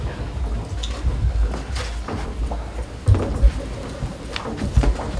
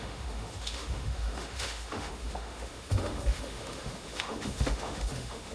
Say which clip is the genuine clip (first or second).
first